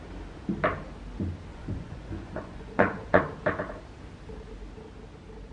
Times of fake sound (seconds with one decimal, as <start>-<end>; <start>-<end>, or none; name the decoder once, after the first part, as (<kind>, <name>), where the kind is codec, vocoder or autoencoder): 1.5-3.2 (vocoder, Vocos)